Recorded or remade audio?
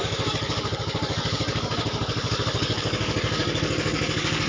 remade